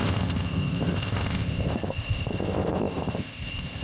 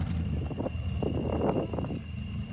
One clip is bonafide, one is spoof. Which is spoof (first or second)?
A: first